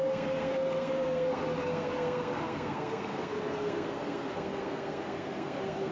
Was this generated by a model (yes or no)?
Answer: yes